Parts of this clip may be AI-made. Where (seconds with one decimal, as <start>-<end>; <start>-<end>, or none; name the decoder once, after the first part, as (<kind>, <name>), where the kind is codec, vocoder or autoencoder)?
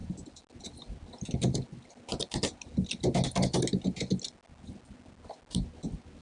none